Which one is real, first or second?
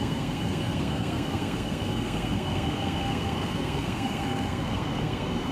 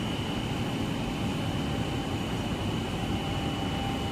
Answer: second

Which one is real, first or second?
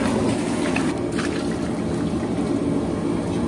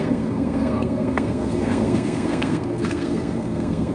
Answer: first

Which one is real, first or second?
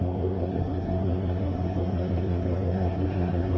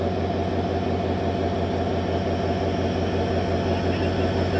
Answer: second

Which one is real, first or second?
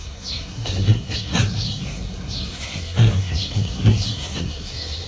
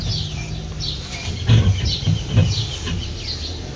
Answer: second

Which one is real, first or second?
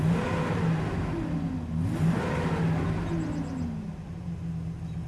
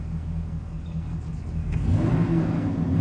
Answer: first